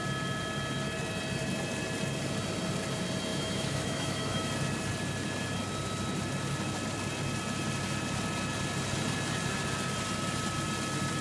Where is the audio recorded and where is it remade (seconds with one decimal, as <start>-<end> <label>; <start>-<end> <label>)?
0.0-3.3 recorded; 3.3-4.5 remade; 4.5-11.2 recorded